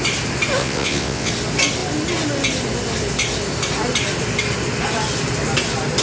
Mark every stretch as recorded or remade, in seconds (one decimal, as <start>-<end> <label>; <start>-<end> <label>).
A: 0.0-0.6 recorded; 0.6-1.3 remade; 1.3-6.0 recorded